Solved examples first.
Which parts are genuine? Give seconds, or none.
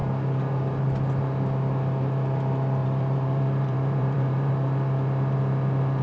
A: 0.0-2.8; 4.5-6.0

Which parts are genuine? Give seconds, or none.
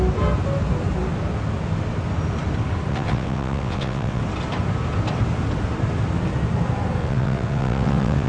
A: 0.0-2.9; 4.2-7.0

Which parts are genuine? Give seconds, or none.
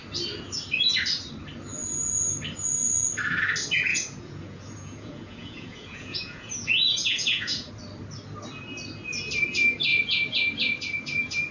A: 0.0-3.9; 7.7-9.9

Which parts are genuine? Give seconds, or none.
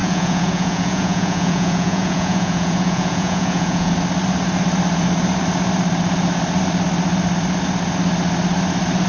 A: 3.9-9.1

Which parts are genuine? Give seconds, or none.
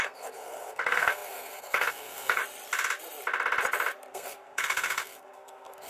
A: 2.4-4.1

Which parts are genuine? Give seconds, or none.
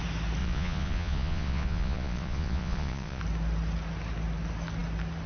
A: 0.0-0.4; 3.2-5.3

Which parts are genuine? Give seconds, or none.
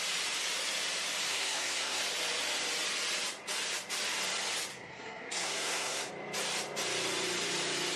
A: 0.0-1.3; 2.0-4.7; 6.1-8.0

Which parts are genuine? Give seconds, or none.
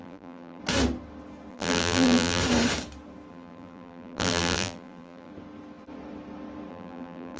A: 0.6-1.5; 2.4-3.3; 5.3-6.7